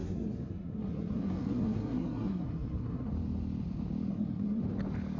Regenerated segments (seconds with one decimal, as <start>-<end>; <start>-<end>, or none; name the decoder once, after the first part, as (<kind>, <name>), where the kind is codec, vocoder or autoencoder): 0.0-3.1 (codec, SNAC); 4.1-4.6